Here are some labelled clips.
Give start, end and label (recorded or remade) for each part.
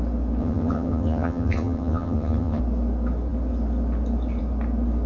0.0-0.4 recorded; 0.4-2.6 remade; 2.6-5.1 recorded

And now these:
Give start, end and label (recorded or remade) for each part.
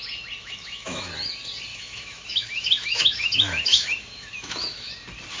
0.0-0.4 recorded; 0.4-1.1 remade; 1.1-1.7 recorded; 1.7-4.9 remade; 4.9-5.4 recorded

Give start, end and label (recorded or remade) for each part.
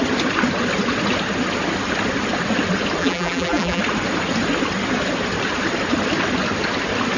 0.0-3.0 recorded; 3.0-3.8 remade; 3.8-7.2 recorded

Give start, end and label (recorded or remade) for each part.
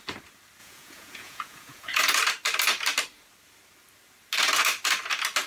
0.0-0.6 recorded; 0.6-2.0 remade; 2.0-5.5 recorded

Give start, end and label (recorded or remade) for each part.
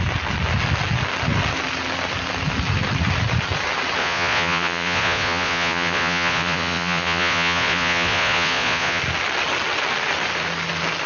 0.0-4.0 recorded; 4.0-9.0 remade; 9.0-11.1 recorded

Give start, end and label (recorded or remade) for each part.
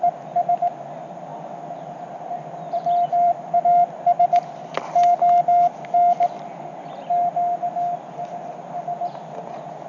0.0-1.3 recorded; 1.3-3.6 remade; 3.6-9.9 recorded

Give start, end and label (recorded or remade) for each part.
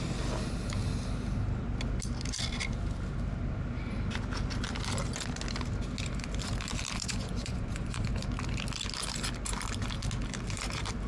0.0-7.0 recorded; 7.0-8.1 remade; 8.1-11.1 recorded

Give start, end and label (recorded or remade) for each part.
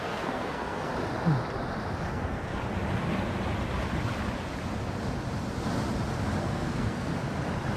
0.0-0.9 remade; 0.9-2.1 recorded; 2.1-2.5 remade; 2.5-6.4 recorded; 6.4-7.1 remade; 7.1-7.8 recorded